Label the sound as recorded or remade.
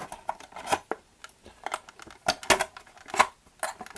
recorded